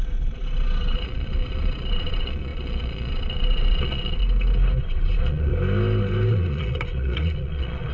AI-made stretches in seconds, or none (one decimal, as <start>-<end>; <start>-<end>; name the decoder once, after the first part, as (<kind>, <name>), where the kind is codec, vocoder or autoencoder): 0.0-4.2 (vocoder, Vocos); 4.8-5.5; 6.3-7.9